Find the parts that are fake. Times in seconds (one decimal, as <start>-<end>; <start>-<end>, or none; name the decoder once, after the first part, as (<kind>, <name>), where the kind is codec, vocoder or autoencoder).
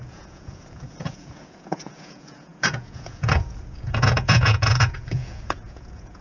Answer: 0.0-6.2 (vocoder, Vocos)